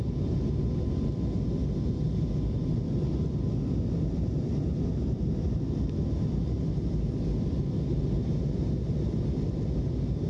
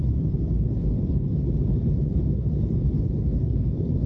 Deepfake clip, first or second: second